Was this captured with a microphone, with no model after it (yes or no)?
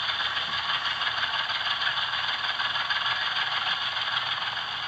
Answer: no